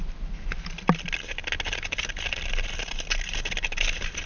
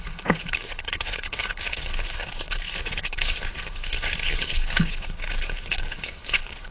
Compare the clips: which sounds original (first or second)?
first